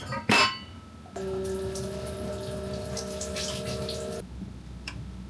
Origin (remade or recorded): recorded